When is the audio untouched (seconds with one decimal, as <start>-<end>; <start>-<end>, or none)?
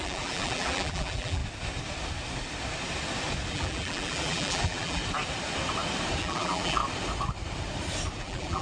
1.4-3.5; 5.0-6.2; 6.8-8.2